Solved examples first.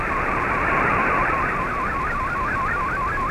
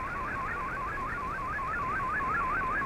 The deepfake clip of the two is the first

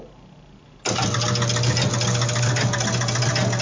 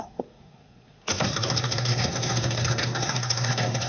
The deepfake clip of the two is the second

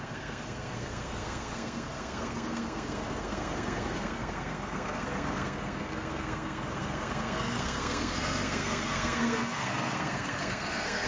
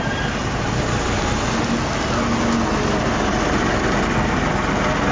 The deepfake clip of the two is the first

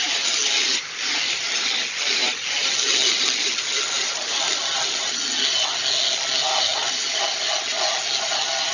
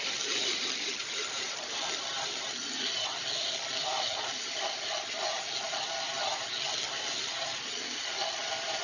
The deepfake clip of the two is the second